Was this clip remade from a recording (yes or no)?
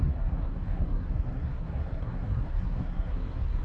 yes